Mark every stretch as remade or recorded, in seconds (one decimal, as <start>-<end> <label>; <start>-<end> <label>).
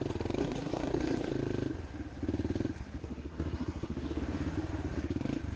0.0-0.4 recorded; 0.4-1.3 remade; 1.3-3.0 recorded; 3.0-4.2 remade; 4.2-5.6 recorded